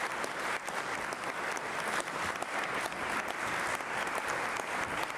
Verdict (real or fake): real